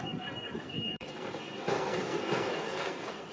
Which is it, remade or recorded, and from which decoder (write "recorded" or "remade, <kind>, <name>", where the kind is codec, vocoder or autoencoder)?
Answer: remade, codec, SNAC